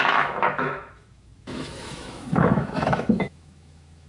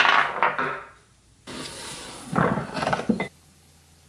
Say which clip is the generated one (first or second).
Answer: first